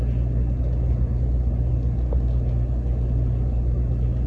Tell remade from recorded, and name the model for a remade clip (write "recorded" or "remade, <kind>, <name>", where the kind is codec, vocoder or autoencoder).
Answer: recorded